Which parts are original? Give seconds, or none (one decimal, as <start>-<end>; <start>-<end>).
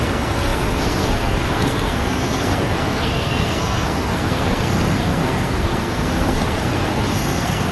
none